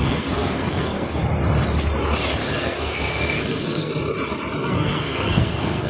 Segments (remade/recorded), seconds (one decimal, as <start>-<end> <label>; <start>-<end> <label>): 0.0-1.2 remade; 1.2-2.5 recorded; 2.5-3.9 remade; 3.9-4.6 recorded; 4.6-5.9 remade